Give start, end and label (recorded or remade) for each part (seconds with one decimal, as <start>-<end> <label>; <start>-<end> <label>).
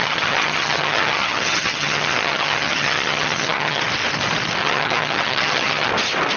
0.0-3.8 remade; 3.8-4.6 recorded; 4.6-5.9 remade; 5.9-6.4 recorded